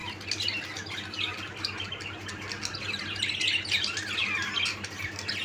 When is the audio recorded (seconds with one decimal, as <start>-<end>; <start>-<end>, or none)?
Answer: 0.0-5.4